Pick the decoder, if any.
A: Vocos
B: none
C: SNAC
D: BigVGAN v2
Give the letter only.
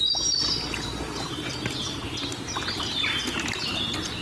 B